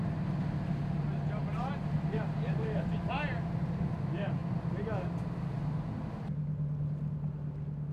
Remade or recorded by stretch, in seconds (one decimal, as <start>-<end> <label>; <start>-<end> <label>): 0.0-7.9 recorded